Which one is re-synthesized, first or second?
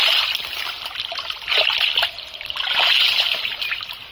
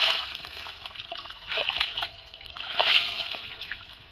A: second